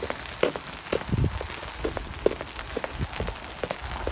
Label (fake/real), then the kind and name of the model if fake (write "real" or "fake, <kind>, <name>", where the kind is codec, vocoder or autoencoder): real